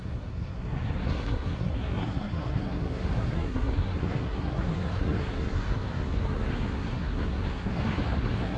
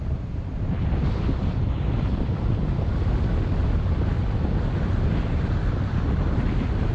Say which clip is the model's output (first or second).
first